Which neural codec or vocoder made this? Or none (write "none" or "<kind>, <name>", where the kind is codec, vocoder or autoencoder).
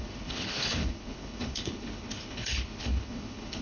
codec, HILCodec